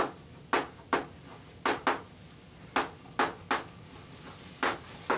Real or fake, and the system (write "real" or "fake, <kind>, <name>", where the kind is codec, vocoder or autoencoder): real